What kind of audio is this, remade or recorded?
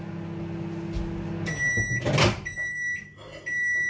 recorded